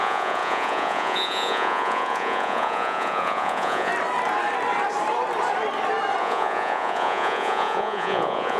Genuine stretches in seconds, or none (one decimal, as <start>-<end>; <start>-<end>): 3.9-6.2